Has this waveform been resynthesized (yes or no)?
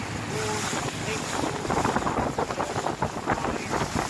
no